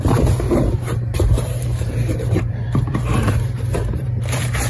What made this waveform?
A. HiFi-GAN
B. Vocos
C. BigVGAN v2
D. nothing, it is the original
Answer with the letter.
C